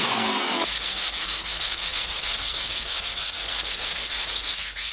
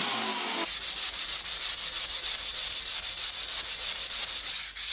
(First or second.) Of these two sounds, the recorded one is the second